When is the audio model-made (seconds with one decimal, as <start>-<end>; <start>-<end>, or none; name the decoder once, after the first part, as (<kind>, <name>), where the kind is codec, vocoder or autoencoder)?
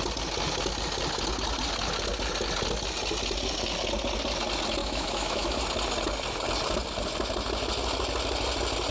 4.8-5.6 (autoencoder, DAC-VAE)